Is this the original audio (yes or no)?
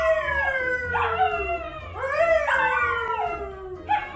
yes